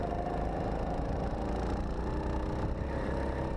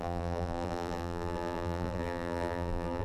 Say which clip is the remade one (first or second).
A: second